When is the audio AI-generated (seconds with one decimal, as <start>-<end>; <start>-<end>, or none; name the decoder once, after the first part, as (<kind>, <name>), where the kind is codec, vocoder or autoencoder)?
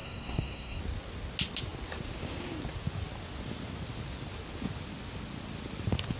0.0-0.8 (codec, SNAC)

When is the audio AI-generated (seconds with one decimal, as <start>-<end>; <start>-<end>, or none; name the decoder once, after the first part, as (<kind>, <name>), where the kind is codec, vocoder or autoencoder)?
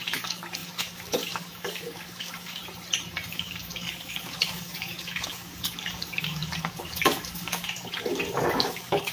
0.0-2.6 (codec, DAC); 3.3-9.1